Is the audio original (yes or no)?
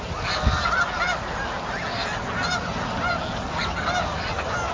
yes